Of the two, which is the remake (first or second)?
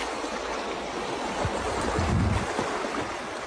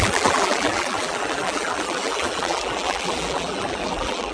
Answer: second